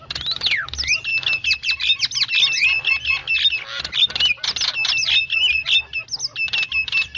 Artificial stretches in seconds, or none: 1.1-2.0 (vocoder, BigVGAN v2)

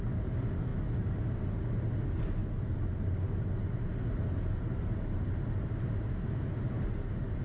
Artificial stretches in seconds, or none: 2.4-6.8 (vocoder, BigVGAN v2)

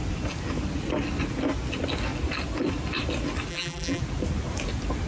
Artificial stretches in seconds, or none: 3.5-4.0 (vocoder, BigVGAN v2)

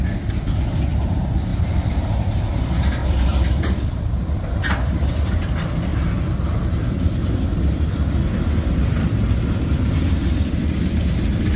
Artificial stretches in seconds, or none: 1.5-2.1 (vocoder, BigVGAN v2); 3.0-5.1; 5.9-8.1

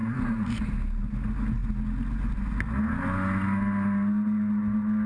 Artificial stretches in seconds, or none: 0.0-0.7 (vocoder, BigVGAN v2)

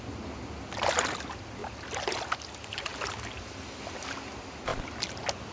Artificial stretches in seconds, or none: 1.6-2.3 (vocoder, BigVGAN v2); 4.7-5.5